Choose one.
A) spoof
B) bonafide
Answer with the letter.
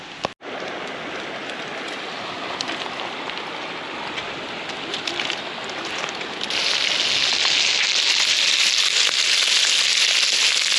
B